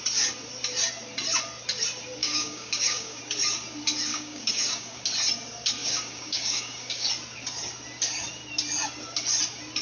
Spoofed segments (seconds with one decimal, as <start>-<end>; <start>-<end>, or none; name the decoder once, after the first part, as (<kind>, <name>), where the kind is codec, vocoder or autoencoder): 2.2-3.2 (codec, DAC); 4.1-5.0; 5.8-7.1